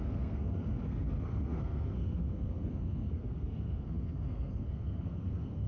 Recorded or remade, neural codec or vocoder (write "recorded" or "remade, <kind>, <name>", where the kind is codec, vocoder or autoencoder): remade, codec, SNAC